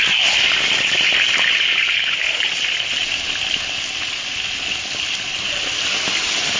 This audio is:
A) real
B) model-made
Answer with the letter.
A